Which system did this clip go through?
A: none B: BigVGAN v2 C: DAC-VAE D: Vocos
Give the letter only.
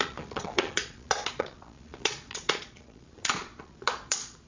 D